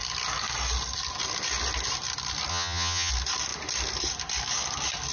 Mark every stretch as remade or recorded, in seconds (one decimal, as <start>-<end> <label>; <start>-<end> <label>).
0.0-2.5 recorded; 2.5-3.1 remade; 3.1-5.1 recorded